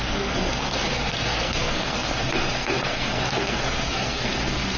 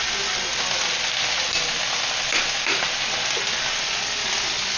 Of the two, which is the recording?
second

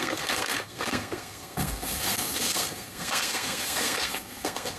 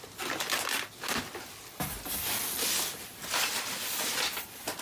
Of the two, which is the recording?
second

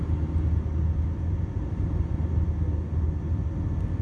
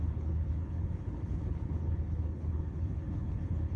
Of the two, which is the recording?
first